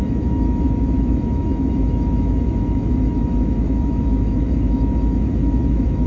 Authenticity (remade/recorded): remade